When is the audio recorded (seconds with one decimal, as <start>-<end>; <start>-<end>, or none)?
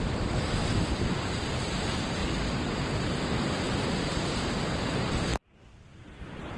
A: 2.2-3.4; 5.3-6.6